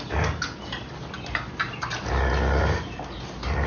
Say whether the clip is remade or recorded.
recorded